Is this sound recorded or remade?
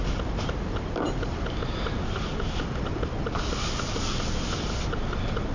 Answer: recorded